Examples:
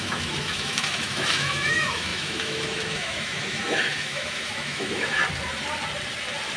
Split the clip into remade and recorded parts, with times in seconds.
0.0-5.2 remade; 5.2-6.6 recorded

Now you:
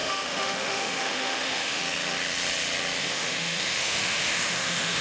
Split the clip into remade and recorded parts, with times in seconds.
0.0-1.8 remade; 1.8-3.0 recorded; 3.0-5.0 remade

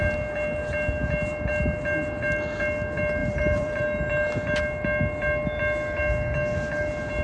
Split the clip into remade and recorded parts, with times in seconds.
0.0-3.2 recorded; 3.2-3.8 remade; 3.8-7.2 recorded

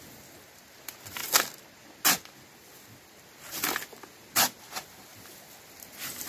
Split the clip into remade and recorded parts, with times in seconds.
0.0-1.2 remade; 1.2-3.0 recorded; 3.0-6.3 remade

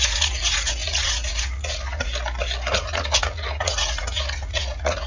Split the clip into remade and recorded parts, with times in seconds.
0.0-2.1 remade; 2.1-2.7 recorded; 2.7-5.1 remade

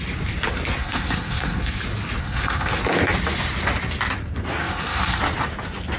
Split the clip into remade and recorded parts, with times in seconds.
0.0-0.8 recorded; 0.8-1.8 remade; 1.8-2.2 recorded; 2.2-2.8 remade; 2.8-4.6 recorded; 4.6-5.2 remade; 5.2-6.0 recorded